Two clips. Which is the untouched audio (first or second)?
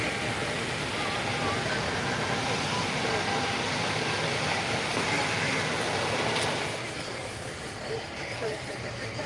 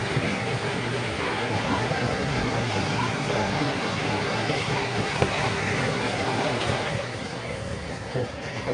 first